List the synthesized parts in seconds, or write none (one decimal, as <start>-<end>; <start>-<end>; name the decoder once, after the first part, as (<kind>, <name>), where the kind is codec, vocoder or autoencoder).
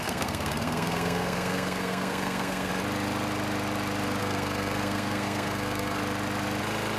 0.0-2.7 (codec, SNAC); 4.2-6.0